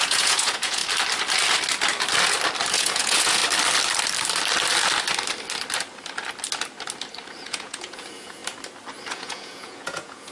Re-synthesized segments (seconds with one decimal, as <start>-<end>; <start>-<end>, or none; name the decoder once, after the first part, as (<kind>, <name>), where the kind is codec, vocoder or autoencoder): 0.0-0.8 (vocoder, Vocos); 2.7-3.4; 7.4-8.4; 9.1-10.3